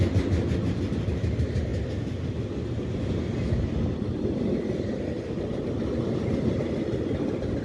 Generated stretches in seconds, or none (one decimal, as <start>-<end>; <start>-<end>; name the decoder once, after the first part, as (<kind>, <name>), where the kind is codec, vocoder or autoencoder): none